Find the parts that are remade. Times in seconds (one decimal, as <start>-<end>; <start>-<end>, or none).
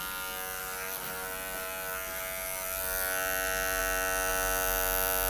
none